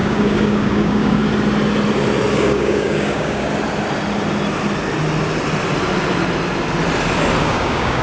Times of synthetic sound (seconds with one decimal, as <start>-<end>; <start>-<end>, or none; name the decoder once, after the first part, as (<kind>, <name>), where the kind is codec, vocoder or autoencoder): 0.0-1.2 (codec, DAC); 2.3-3.5; 7.4-8.0